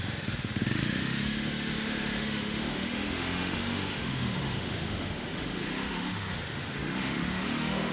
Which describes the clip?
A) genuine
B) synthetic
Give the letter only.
B